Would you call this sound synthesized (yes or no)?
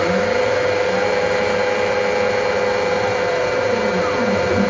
no